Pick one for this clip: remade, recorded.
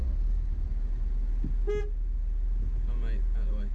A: recorded